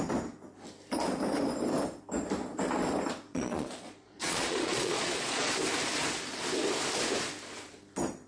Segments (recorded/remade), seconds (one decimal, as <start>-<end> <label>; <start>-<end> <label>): 0.0-3.3 recorded; 3.3-5.5 remade; 5.5-8.3 recorded